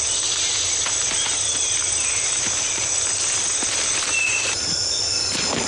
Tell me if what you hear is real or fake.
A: real